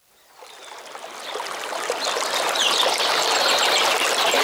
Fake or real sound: real